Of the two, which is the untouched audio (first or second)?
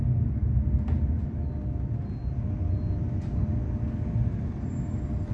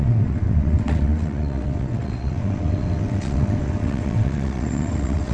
first